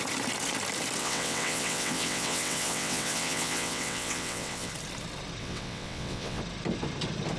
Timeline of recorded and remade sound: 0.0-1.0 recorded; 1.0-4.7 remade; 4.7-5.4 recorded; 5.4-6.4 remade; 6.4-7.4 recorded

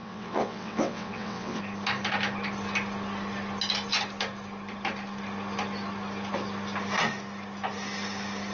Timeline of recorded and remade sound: 0.0-1.6 remade; 1.6-8.5 recorded

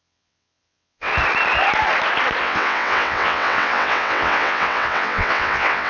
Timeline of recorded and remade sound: 0.0-1.1 remade; 1.1-2.4 recorded; 2.4-5.9 remade

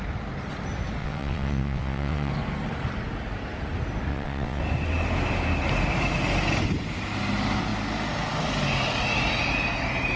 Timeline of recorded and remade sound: 0.0-1.0 recorded; 1.0-2.3 remade; 2.3-4.1 recorded; 4.1-4.6 remade; 4.6-10.2 recorded

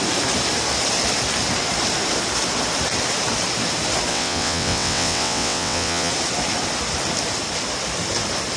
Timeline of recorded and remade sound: 0.0-4.1 recorded; 4.1-6.1 remade; 6.1-8.6 recorded

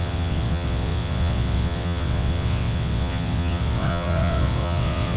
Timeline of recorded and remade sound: 0.0-5.2 remade

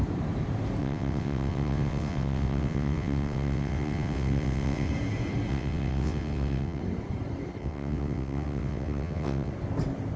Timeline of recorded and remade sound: 0.0-0.8 recorded; 0.8-4.9 remade; 4.9-5.5 recorded; 5.5-6.8 remade; 6.8-7.6 recorded; 7.6-9.5 remade; 9.5-10.2 recorded

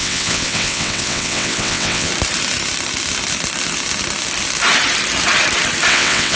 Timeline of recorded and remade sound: 0.0-2.1 remade; 2.1-5.9 recorded; 5.9-6.4 remade